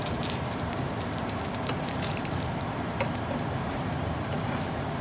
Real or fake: fake